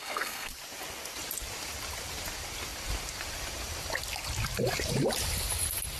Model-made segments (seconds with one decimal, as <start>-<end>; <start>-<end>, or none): 0.0-0.5